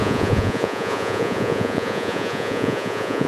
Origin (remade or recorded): remade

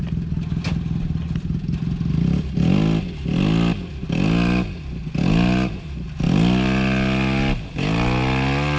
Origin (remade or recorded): recorded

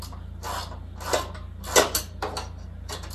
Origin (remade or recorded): recorded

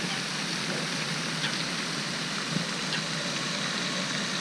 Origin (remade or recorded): recorded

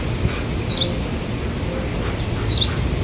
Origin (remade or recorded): recorded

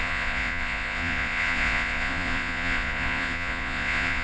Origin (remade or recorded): remade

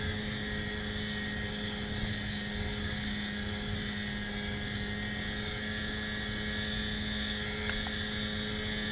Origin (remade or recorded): recorded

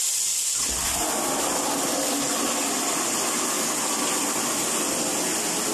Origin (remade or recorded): recorded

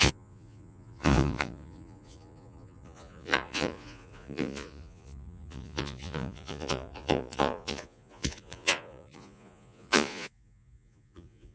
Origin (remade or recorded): remade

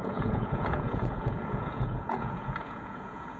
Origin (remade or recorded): remade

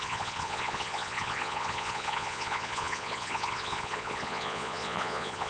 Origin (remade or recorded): remade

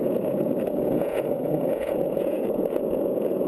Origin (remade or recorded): remade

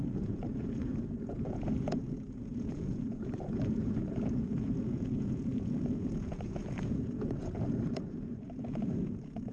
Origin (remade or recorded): remade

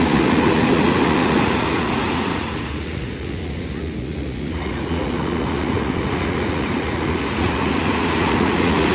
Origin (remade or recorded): remade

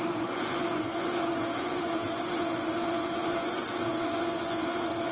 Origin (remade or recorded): remade